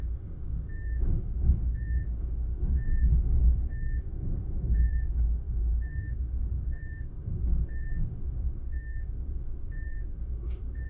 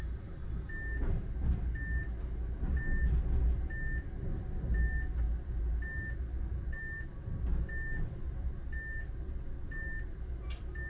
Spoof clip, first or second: first